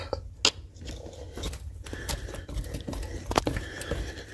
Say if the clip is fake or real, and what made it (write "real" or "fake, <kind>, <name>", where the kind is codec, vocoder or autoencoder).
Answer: real